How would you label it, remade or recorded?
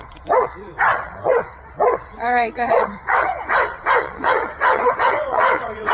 remade